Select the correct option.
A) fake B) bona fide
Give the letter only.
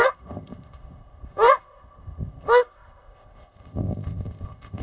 A